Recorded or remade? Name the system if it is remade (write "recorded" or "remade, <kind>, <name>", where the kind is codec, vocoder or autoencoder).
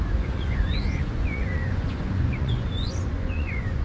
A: remade, vocoder, Vocos